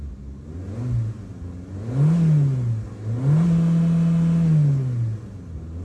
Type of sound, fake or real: real